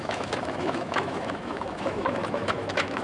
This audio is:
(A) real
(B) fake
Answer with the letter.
B